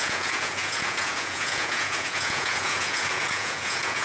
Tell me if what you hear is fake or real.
fake